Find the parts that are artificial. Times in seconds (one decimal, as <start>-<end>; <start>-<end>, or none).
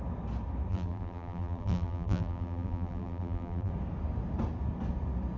0.7-3.7